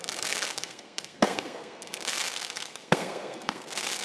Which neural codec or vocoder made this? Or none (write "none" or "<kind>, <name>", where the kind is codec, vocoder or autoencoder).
codec, SNAC